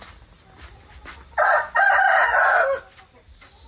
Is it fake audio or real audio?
real